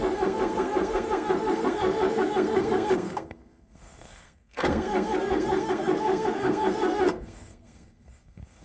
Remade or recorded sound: remade